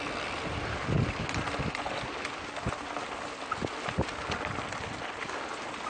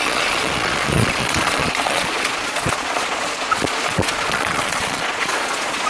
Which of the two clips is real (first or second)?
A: first